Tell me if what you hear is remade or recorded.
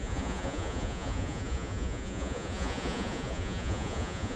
remade